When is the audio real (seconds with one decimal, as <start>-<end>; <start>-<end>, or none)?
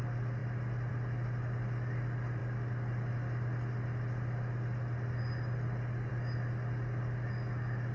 0.0-7.9